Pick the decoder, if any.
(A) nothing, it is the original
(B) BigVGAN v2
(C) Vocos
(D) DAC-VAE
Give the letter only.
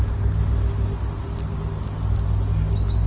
A